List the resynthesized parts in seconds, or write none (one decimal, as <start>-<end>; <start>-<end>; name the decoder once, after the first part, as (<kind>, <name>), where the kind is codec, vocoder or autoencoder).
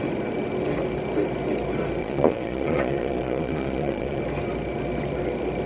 2.0-4.2 (vocoder, Vocos)